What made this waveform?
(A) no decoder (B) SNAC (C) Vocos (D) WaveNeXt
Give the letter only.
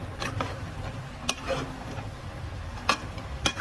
A